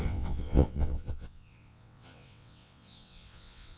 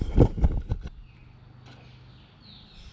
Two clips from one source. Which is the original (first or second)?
second